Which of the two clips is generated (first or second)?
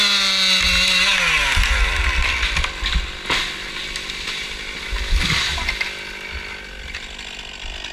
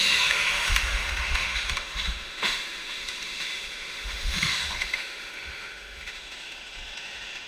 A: second